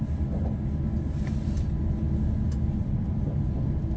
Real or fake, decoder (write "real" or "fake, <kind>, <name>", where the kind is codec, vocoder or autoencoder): real